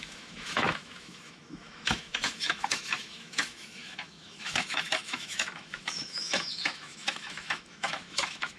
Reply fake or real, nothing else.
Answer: fake